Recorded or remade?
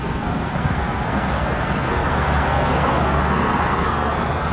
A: remade